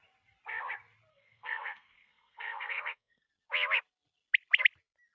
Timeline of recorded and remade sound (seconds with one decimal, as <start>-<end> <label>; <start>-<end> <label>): 0.0-1.1 recorded; 1.1-3.3 remade; 3.3-5.1 recorded